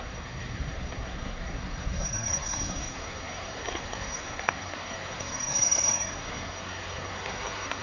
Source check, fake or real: fake